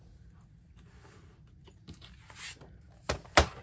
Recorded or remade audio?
recorded